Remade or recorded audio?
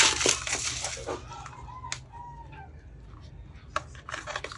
recorded